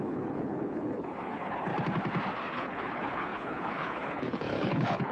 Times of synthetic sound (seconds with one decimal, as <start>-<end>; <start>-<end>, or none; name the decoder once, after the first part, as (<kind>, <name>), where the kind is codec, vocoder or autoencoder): 0.0-1.7 (codec, HILCodec); 2.5-5.1